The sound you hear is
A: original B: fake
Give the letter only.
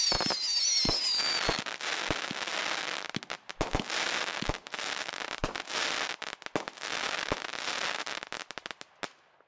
A